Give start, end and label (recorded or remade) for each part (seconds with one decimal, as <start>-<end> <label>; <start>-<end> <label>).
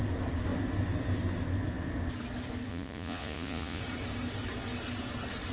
0.0-2.7 recorded; 2.7-3.8 remade; 3.8-5.5 recorded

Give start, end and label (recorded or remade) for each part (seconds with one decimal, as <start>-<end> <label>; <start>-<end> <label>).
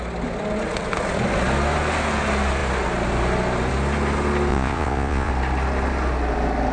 0.0-4.5 recorded; 4.5-5.3 remade; 5.3-6.7 recorded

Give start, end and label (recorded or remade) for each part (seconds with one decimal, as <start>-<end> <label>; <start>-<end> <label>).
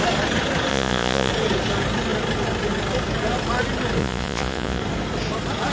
0.0-0.7 recorded; 0.7-1.3 remade; 1.3-4.0 recorded; 4.0-4.8 remade; 4.8-5.7 recorded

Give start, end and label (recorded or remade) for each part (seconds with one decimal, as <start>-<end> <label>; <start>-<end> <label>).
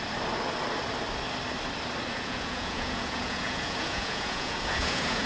0.0-2.1 recorded; 2.1-5.3 remade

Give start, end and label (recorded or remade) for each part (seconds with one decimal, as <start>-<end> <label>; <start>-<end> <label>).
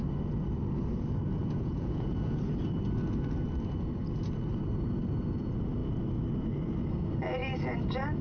0.0-1.4 recorded; 1.4-2.4 remade; 2.4-8.2 recorded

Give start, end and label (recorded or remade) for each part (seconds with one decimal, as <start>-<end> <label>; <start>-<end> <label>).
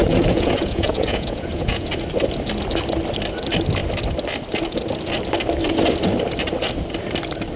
0.0-1.9 remade; 1.9-7.6 recorded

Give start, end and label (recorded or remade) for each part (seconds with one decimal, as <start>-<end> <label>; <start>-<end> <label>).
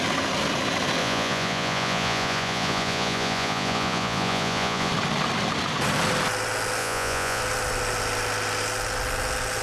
0.0-1.0 recorded; 1.0-4.9 remade; 4.9-6.8 recorded; 6.8-7.4 remade; 7.4-9.6 recorded